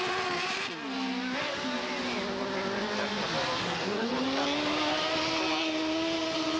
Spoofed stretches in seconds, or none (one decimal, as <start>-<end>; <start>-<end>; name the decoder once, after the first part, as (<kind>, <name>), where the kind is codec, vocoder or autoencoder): 3.6-4.1 (codec, DAC)